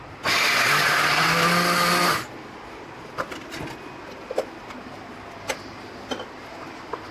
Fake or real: real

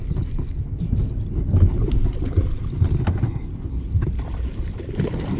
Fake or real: real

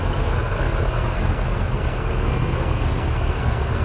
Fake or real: fake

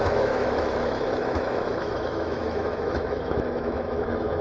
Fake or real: fake